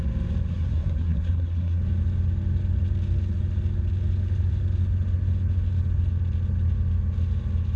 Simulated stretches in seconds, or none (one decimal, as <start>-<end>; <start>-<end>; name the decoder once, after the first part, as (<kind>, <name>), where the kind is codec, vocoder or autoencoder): 0.5-1.8 (codec, SNAC)